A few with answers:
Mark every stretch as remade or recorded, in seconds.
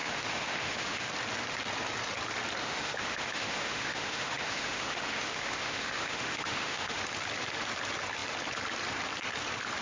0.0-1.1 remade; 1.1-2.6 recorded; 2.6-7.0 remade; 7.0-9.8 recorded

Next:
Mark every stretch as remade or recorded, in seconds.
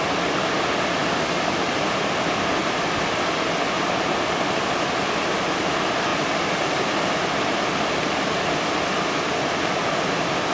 0.0-10.5 recorded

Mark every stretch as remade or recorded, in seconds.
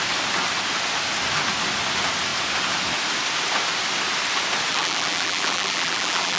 0.0-4.7 recorded; 4.7-6.4 remade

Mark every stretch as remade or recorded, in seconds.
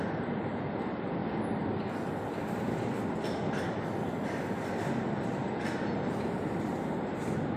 0.0-7.6 recorded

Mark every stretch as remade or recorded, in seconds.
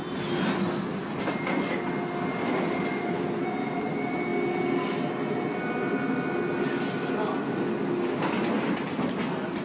0.0-2.4 recorded; 2.4-3.4 remade; 3.4-9.6 recorded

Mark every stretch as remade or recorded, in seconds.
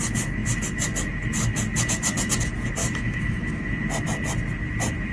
0.0-2.8 recorded; 2.8-3.7 remade; 3.7-5.1 recorded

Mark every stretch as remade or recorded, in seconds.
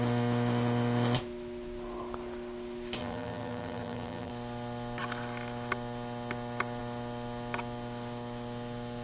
0.0-3.0 recorded; 3.0-4.3 remade; 4.3-9.0 recorded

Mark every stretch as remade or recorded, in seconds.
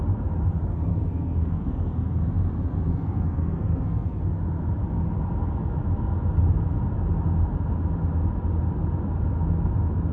0.0-0.9 recorded; 0.9-2.3 remade; 2.3-2.9 recorded; 2.9-4.2 remade; 4.2-10.1 recorded